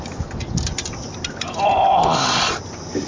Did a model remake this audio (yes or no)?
no